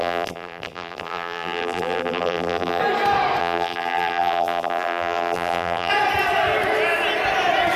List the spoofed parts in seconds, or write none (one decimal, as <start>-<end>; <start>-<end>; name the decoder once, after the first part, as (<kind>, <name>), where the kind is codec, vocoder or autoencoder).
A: 0.0-2.8 (vocoder, BigVGAN v2); 3.4-5.9